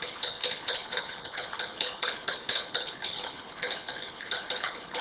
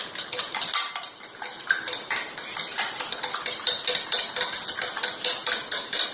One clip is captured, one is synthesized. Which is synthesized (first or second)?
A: first